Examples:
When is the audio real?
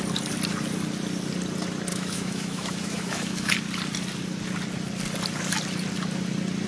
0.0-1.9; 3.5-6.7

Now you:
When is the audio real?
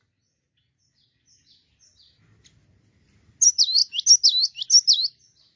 0.0-5.6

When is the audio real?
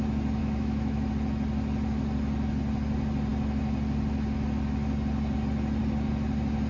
0.0-0.4; 1.1-6.7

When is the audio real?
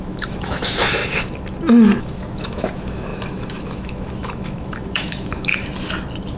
1.0-2.0; 5.5-6.4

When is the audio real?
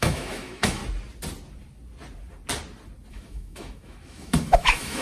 0.8-3.1